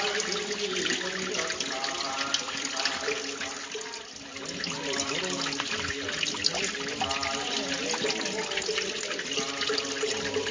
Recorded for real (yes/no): yes